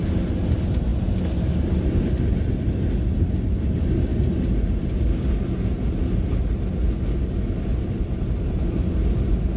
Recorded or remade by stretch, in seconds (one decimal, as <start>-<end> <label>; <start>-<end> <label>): 0.0-9.6 recorded

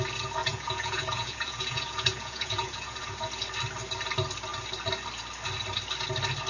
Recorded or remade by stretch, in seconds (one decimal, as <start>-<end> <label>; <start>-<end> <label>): 0.0-0.4 recorded; 0.4-3.0 remade; 3.0-6.5 recorded

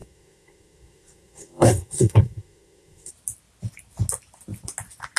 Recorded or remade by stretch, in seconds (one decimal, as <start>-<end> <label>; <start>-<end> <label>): 0.0-3.1 remade; 3.1-5.2 recorded

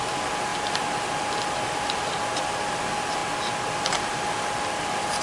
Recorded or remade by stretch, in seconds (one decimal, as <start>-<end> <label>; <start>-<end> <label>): 0.0-5.2 recorded